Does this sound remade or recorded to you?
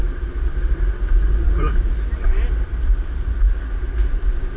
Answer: recorded